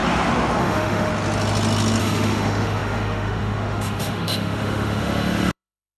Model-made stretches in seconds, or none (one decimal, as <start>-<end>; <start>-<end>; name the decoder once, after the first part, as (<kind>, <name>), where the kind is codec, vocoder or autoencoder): 0.6-1.1 (autoencoder, DAC-VAE); 2.0-6.0

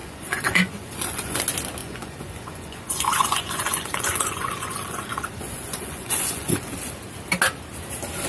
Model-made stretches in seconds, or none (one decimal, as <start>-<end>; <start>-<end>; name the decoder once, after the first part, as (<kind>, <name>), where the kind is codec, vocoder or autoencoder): 0.0-1.4 (vocoder, Vocos); 1.8-6.7